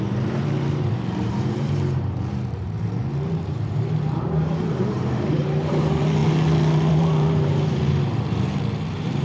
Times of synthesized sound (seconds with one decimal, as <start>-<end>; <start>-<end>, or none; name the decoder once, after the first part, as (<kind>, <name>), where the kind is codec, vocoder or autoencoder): 0.0-6.2 (vocoder, BigVGAN v2); 6.9-9.2